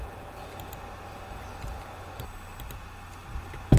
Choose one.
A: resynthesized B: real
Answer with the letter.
B